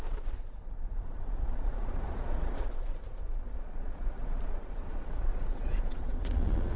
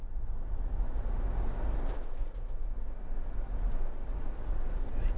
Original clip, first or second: second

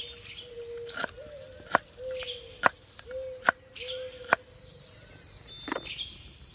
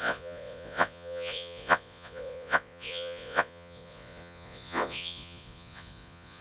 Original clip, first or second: first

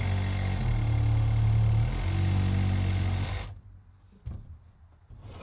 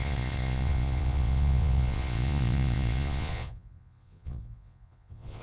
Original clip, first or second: first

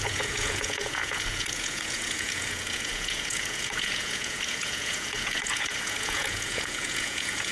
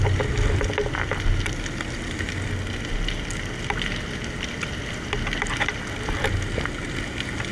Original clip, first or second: second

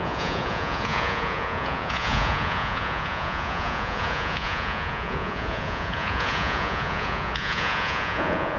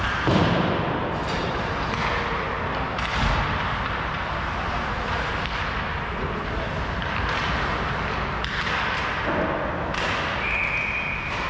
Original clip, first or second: second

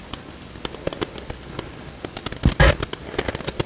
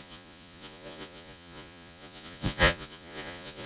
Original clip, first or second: first